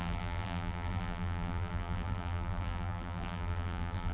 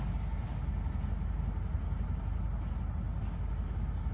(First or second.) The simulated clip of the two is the first